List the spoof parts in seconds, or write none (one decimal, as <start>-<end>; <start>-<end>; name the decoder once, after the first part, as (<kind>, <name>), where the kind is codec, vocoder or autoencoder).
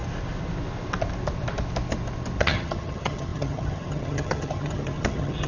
2.4-5.5 (vocoder, HiFi-GAN)